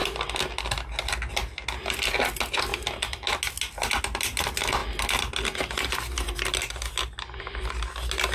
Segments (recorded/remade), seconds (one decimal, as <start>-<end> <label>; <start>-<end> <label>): 0.0-8.3 recorded